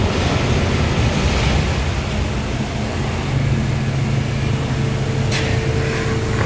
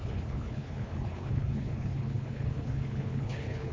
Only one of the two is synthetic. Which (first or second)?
second